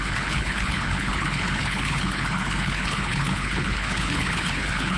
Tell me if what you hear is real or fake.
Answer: fake